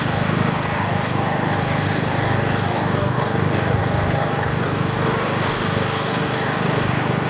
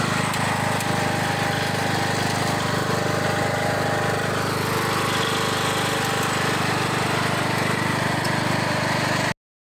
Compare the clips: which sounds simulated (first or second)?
first